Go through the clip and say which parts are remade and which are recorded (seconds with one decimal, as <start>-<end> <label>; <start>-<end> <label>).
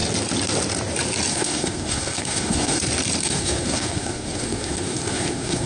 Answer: 0.0-1.3 recorded; 1.3-2.8 remade; 2.8-3.2 recorded; 3.2-5.7 remade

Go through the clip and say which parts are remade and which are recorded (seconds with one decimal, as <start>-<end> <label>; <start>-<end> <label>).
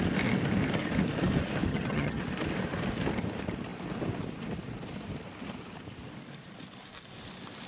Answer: 0.0-1.7 recorded; 1.7-2.2 remade; 2.2-7.7 recorded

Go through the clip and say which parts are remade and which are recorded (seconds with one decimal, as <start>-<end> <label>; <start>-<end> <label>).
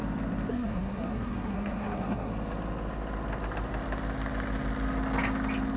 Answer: 0.0-0.5 recorded; 0.5-2.3 remade; 2.3-5.8 recorded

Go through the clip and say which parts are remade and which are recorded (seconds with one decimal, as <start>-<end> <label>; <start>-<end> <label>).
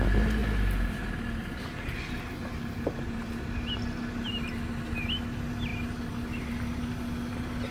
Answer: 0.0-7.7 recorded